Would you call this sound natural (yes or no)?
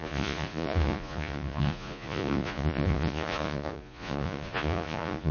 no